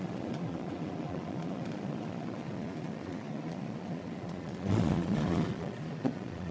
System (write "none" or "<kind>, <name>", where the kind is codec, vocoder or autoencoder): vocoder, Vocos